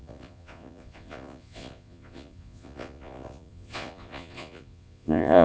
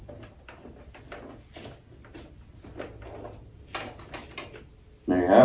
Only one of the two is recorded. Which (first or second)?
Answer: second